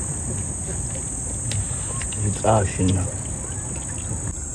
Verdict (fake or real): real